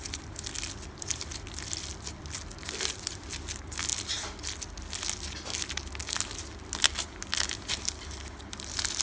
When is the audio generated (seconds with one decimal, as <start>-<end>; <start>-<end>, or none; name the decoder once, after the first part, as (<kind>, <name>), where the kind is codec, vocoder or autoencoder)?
none